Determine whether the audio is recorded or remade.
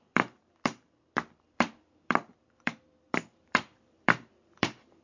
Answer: remade